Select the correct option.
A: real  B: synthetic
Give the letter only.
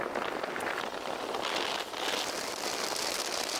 A